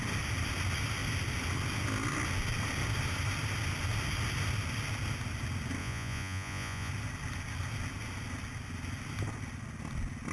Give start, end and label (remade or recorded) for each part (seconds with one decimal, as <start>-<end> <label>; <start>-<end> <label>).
0.0-5.8 recorded; 5.8-6.9 remade; 6.9-10.3 recorded